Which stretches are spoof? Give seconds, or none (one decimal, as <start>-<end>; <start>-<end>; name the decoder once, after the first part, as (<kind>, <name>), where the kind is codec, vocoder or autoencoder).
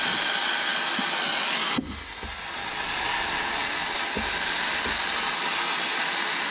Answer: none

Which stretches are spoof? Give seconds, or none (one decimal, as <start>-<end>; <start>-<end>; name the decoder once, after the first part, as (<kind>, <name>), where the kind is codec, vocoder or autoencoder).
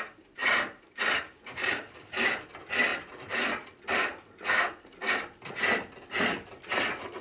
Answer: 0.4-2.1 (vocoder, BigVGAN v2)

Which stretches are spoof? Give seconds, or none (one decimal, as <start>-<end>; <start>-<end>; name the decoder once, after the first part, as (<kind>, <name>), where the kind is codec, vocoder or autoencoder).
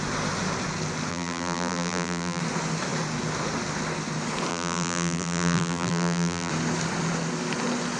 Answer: 1.1-2.4 (vocoder, BigVGAN v2); 4.5-6.5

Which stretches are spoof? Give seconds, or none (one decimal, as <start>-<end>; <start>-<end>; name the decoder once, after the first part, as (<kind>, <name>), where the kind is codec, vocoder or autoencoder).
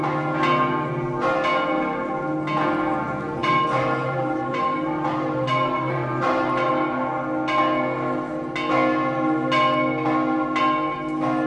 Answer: 3.4-6.7 (vocoder, BigVGAN v2)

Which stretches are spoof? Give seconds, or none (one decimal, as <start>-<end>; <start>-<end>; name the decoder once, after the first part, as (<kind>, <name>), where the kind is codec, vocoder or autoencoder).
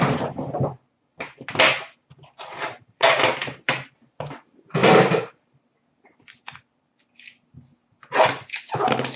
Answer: 4.8-5.7 (vocoder, BigVGAN v2)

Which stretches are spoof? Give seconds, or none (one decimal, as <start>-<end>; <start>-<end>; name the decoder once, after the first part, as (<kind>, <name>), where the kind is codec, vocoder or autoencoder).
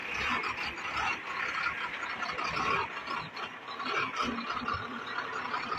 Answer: 2.3-3.0 (vocoder, BigVGAN v2)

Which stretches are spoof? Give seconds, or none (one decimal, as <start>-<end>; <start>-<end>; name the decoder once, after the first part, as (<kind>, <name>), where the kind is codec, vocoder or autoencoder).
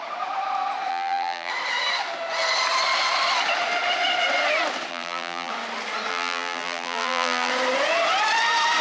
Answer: 0.9-1.5 (vocoder, BigVGAN v2); 4.9-5.5; 6.1-7.5